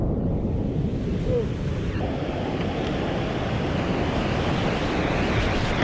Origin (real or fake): real